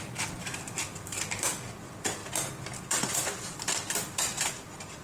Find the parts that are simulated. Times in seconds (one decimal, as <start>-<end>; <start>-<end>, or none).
0.0-2.2; 3.1-5.0